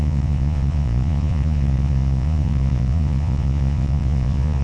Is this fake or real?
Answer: fake